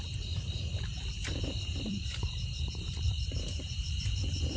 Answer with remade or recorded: remade